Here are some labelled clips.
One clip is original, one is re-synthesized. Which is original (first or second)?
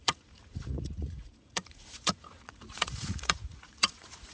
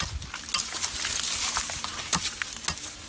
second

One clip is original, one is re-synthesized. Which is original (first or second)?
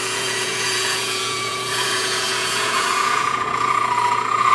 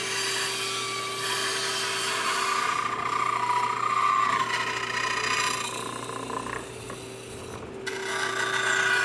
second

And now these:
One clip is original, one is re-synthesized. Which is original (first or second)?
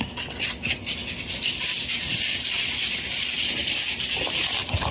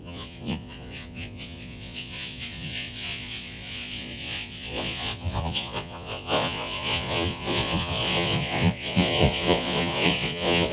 first